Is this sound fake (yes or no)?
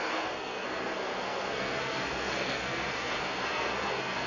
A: yes